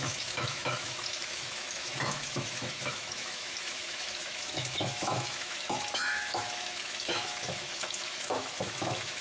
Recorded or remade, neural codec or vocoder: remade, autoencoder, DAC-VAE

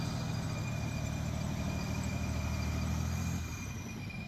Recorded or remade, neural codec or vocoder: remade, vocoder, BigVGAN v2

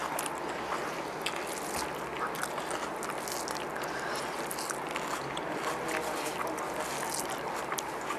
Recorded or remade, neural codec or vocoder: recorded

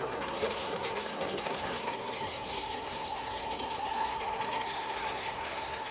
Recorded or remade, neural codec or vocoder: remade, codec, SNAC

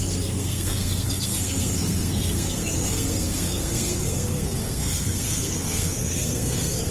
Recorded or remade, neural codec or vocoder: remade, codec, SNAC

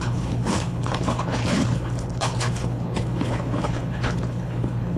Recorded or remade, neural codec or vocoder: remade, codec, HILCodec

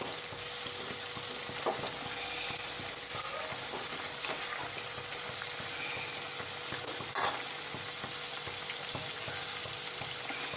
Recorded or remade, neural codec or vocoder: recorded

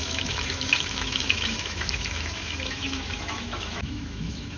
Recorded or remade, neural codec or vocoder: remade, autoencoder, DAC-VAE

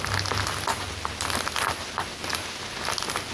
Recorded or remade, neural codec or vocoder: recorded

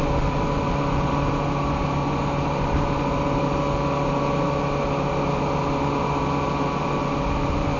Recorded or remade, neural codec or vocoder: recorded